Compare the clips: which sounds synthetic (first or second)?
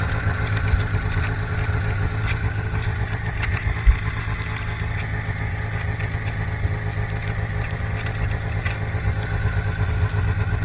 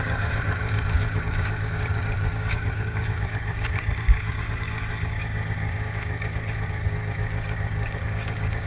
second